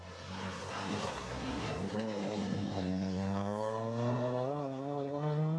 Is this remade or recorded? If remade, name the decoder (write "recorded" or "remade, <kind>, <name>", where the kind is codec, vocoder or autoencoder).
remade, codec, SNAC